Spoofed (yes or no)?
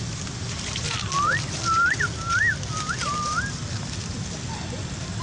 no